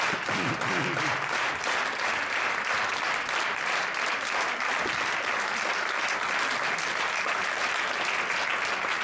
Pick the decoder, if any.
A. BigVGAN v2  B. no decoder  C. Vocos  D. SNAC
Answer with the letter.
B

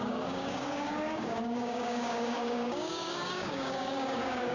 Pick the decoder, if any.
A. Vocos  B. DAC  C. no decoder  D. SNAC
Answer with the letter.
B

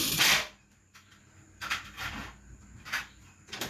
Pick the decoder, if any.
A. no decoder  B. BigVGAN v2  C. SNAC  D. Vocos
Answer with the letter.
B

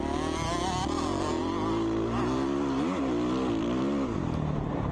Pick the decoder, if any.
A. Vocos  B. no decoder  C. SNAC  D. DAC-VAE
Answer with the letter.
B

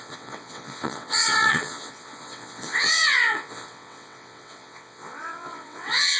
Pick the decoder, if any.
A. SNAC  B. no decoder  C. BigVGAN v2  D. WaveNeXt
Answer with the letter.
D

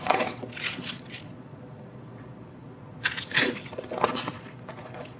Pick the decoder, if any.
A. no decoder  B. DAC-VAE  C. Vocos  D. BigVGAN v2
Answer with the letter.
C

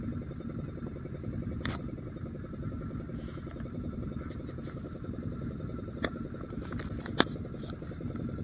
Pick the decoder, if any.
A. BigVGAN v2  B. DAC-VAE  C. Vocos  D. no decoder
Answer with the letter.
D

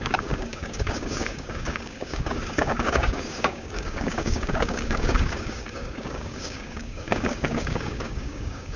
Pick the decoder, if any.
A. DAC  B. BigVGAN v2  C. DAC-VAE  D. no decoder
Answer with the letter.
A